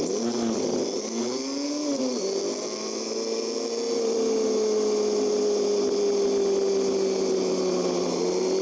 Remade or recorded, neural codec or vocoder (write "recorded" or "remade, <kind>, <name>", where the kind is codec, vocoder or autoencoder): recorded